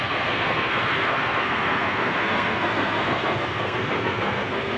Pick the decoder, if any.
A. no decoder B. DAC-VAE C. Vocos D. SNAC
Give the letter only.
D